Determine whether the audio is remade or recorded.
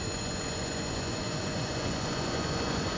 remade